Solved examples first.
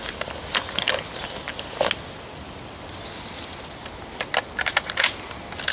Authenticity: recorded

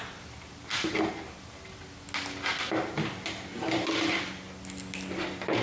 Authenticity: recorded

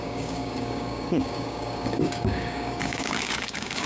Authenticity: remade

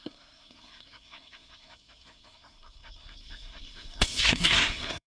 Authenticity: remade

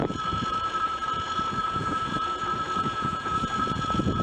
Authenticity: remade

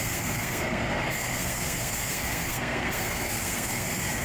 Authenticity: remade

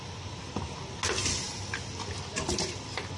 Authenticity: recorded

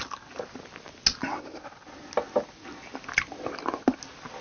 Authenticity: recorded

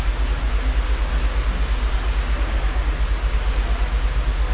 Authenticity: recorded